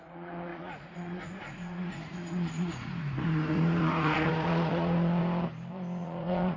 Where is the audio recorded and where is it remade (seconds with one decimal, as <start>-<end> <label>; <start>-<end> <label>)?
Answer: 0.0-5.2 remade; 5.2-6.0 recorded; 6.0-6.6 remade